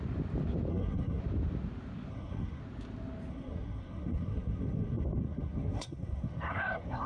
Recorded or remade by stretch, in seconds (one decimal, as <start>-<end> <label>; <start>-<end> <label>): 0.0-0.7 recorded; 0.7-1.2 remade; 1.2-2.1 recorded; 2.1-2.6 remade; 2.6-3.3 recorded; 3.3-7.1 remade